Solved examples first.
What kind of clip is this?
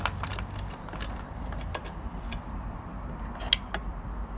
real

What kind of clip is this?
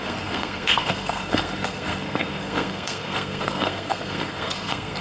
fake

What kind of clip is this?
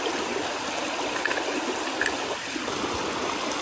real